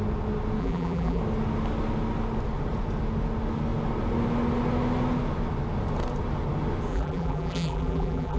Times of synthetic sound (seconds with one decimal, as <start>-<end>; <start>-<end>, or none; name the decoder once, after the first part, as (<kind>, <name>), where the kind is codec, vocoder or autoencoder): 0.6-1.2 (vocoder, BigVGAN v2); 6.9-8.4